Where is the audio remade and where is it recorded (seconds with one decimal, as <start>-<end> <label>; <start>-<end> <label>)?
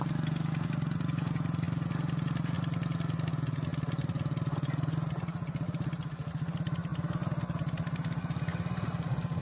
0.0-9.4 recorded